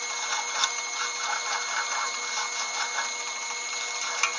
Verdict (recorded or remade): recorded